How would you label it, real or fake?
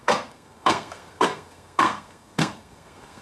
fake